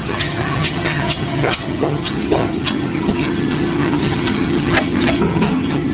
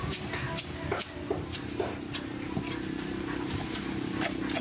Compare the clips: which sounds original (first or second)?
second